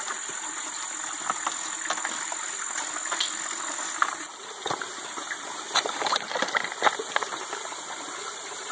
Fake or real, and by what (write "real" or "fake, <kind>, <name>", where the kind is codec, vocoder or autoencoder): real